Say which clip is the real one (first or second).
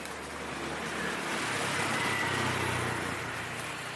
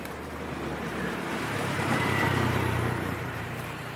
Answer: first